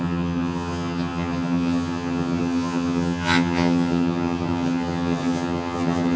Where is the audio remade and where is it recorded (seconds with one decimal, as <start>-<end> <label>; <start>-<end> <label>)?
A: 0.0-6.2 remade